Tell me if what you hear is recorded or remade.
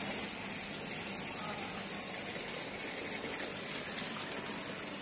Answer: recorded